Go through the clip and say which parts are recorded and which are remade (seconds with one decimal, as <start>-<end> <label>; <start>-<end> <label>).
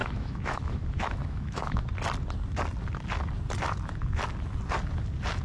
0.0-1.8 remade; 1.8-5.4 recorded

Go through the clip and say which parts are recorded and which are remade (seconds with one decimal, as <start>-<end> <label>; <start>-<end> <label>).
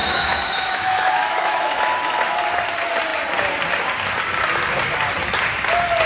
0.0-2.4 remade; 2.4-6.1 recorded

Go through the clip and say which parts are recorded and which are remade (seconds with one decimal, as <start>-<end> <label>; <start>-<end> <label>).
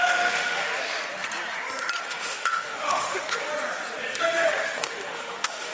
0.0-0.7 remade; 0.7-2.0 recorded; 2.0-3.5 remade; 3.5-4.2 recorded; 4.2-5.7 remade